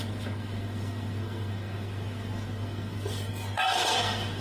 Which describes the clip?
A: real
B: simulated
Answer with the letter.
B